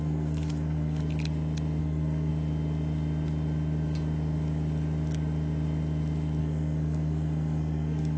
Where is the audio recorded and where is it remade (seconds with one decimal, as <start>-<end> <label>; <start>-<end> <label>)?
0.0-1.0 remade; 1.0-1.8 recorded; 1.8-2.3 remade; 2.3-6.4 recorded; 6.4-8.2 remade